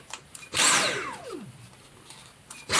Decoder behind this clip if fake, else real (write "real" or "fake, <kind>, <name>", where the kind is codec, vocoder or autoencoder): fake, vocoder, BigVGAN v2